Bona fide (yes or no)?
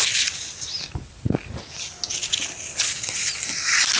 yes